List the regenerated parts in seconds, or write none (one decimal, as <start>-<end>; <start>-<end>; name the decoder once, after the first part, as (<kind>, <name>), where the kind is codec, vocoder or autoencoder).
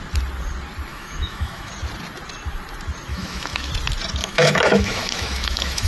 0.9-1.7 (autoencoder, DAC-VAE); 3.1-3.7; 4.2-5.9